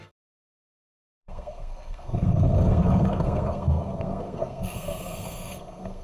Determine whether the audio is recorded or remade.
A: remade